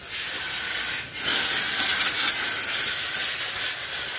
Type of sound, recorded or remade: recorded